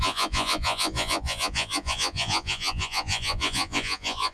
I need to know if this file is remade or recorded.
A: remade